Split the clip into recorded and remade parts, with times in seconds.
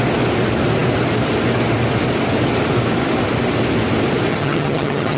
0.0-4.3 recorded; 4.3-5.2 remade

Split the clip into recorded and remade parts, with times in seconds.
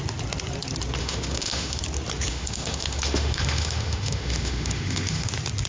0.0-1.0 recorded; 1.0-1.8 remade; 1.8-2.3 recorded; 2.3-5.3 remade; 5.3-5.7 recorded